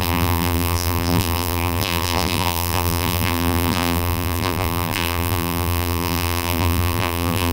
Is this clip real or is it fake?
fake